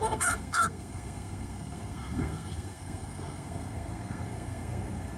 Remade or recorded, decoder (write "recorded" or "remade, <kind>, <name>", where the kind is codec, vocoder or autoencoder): remade, codec, SNAC